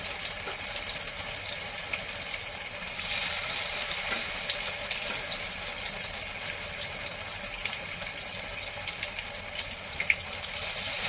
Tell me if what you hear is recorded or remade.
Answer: recorded